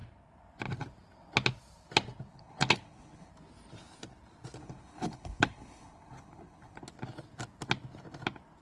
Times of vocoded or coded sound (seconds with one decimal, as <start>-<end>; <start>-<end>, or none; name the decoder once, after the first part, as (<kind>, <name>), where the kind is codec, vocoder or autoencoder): 2.3-3.3 (codec, HILCodec); 4.6-6.8